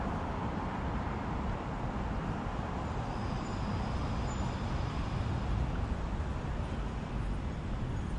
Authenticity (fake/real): fake